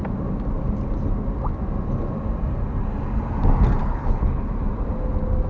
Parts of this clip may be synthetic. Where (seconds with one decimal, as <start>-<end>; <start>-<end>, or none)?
3.8-4.5